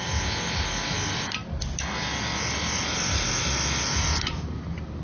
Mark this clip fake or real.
real